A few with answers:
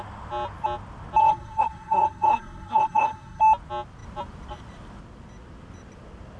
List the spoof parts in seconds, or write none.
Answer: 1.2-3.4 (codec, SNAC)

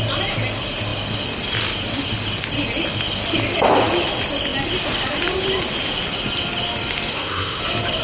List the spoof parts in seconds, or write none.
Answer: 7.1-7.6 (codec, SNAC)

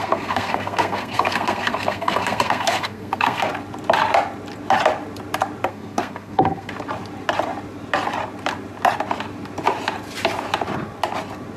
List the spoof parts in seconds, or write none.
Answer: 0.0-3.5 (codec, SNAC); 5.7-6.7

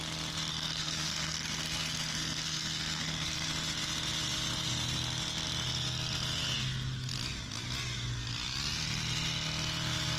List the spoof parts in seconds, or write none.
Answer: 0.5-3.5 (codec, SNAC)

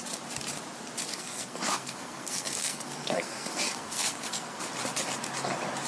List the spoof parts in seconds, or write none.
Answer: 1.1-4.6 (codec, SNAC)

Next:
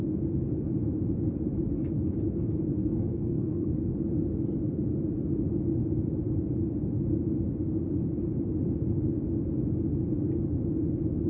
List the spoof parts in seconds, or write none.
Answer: 2.8-3.9 (codec, SNAC)